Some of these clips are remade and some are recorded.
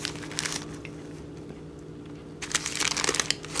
recorded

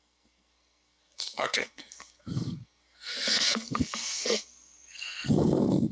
remade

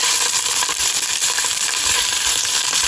remade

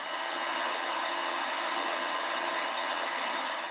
remade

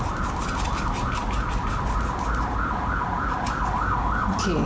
recorded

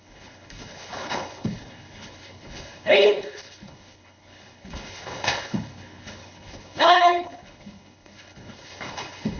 remade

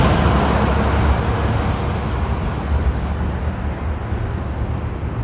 recorded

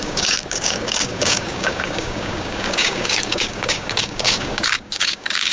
remade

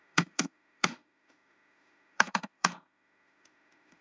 remade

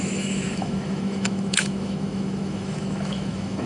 remade